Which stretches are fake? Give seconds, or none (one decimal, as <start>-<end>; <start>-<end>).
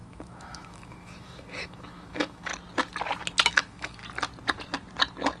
0.0-2.5; 3.5-4.0